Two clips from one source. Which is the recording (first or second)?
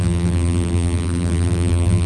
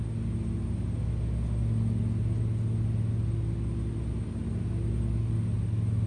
second